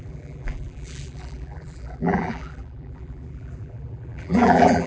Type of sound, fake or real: fake